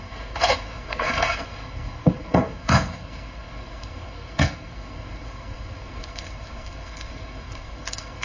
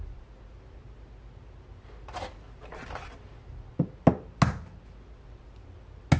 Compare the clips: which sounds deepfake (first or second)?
first